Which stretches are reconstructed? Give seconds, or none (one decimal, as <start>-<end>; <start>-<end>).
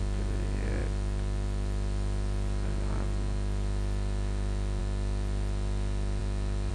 none